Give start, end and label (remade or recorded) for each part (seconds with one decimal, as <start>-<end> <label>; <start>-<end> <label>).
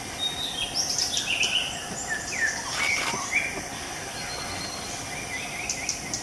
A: 0.0-6.2 recorded